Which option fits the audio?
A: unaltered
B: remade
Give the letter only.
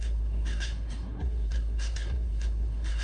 B